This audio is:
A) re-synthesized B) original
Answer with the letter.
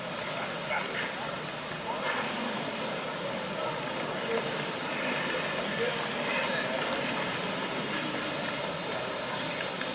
B